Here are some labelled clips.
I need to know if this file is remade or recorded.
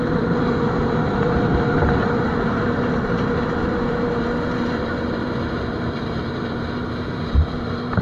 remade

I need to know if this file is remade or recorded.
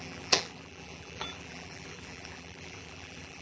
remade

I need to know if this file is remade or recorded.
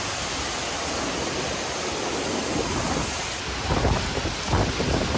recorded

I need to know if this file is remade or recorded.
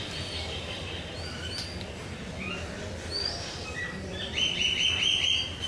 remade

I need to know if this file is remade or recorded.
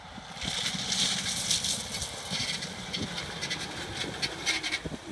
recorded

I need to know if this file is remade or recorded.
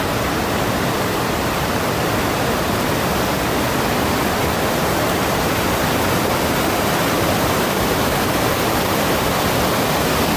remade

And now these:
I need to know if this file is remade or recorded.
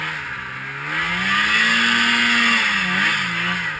recorded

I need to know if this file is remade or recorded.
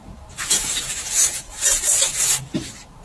recorded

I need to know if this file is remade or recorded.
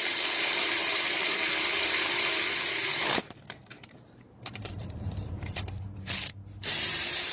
remade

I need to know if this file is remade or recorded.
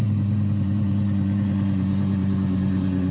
remade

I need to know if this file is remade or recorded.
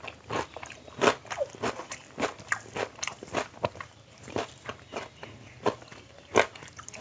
remade